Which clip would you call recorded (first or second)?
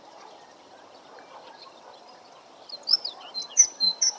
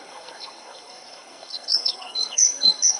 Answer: first